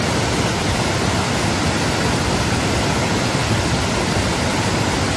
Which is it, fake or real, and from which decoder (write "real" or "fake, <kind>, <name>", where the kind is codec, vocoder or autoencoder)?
real